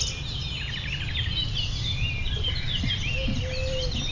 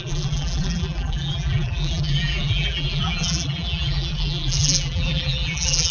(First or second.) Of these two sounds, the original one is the first